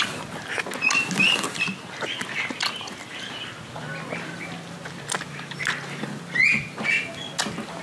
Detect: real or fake real